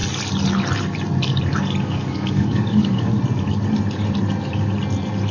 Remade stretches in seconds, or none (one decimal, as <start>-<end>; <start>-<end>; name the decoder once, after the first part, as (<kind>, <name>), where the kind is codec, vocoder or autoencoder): 1.8-3.1 (codec, DAC)